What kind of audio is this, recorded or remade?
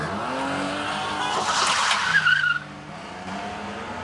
recorded